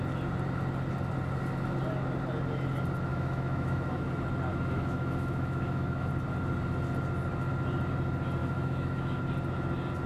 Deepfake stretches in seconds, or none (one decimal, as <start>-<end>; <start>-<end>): 3.1-4.1; 4.5-6.1; 8.4-9.2